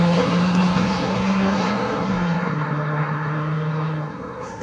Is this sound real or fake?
fake